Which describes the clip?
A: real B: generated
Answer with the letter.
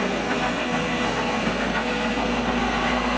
B